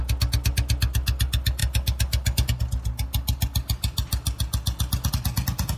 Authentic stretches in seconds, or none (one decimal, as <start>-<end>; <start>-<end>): 0.0-5.8